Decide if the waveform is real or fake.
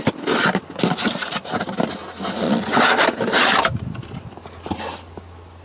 real